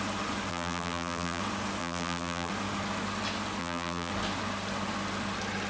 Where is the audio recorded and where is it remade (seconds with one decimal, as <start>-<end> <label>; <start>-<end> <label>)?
0.0-0.5 recorded; 0.5-1.4 remade; 1.4-1.8 recorded; 1.8-2.5 remade; 2.5-3.6 recorded; 3.6-4.1 remade; 4.1-5.7 recorded